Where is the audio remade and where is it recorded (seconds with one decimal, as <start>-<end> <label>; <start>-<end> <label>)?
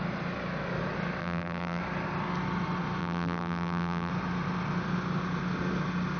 0.0-1.2 recorded; 1.2-1.8 remade; 1.8-3.0 recorded; 3.0-4.1 remade; 4.1-6.2 recorded